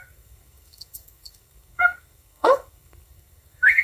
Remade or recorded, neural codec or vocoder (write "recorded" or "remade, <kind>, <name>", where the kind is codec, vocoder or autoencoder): remade, codec, SNAC